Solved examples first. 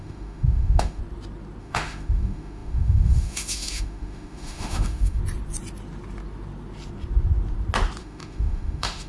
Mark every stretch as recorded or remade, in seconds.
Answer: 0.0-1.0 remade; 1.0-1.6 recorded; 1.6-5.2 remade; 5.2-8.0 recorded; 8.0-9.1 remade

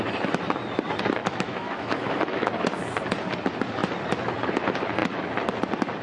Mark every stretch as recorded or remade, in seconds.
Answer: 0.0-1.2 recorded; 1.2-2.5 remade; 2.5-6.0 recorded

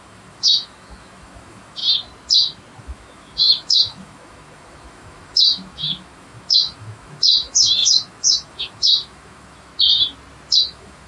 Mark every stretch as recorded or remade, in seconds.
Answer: 0.0-1.8 remade; 1.8-2.8 recorded; 2.8-9.7 remade; 9.7-10.6 recorded; 10.6-11.1 remade